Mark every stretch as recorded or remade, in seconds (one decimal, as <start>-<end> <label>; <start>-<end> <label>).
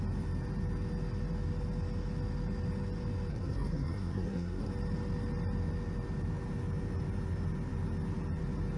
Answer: 0.0-3.3 recorded; 3.3-4.7 remade; 4.7-8.8 recorded